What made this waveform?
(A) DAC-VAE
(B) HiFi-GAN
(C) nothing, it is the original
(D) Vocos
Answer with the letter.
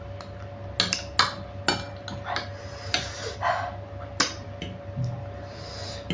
C